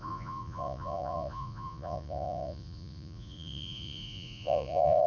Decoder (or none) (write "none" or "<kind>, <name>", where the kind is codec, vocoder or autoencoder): vocoder, Vocos